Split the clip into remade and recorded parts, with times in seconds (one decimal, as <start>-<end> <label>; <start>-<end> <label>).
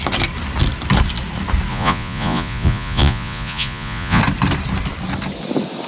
0.0-1.7 recorded; 1.7-4.2 remade; 4.2-5.9 recorded